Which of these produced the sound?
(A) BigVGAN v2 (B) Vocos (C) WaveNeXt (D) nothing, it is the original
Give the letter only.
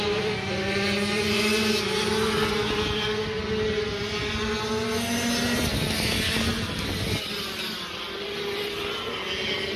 D